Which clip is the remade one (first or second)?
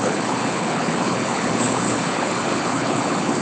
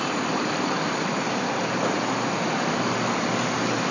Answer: first